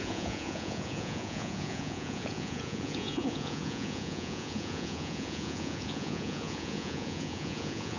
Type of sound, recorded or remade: remade